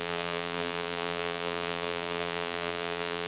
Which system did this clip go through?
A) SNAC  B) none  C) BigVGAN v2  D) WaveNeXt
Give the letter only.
C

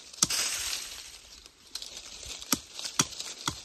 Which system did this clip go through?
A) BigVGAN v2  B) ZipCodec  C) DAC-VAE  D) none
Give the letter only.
A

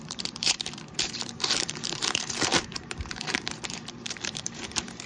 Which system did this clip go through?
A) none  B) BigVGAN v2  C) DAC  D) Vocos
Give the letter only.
B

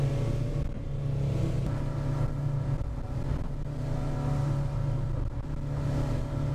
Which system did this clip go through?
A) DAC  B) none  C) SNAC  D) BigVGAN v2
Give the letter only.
B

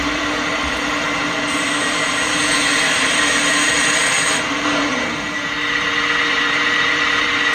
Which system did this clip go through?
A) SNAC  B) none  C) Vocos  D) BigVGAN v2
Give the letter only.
D